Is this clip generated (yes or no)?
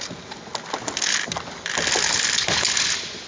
no